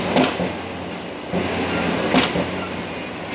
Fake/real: real